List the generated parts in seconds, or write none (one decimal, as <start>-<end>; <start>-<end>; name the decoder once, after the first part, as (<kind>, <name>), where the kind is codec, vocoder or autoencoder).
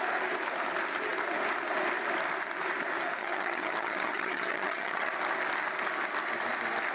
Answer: 3.2-5.1 (vocoder, HiFi-GAN)